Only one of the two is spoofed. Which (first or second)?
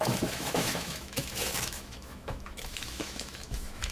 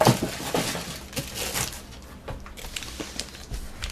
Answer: first